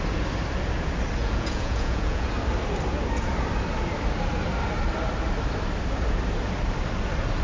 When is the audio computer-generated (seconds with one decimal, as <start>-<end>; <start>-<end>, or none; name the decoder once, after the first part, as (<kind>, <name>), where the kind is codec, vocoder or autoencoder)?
1.2-2.3 (vocoder, Vocos)